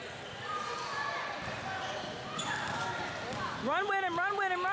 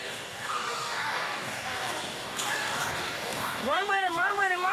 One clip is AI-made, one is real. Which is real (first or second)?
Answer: first